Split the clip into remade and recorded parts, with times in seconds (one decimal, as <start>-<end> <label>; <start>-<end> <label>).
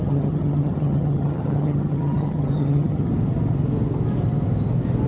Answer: 0.0-3.1 remade; 3.1-5.1 recorded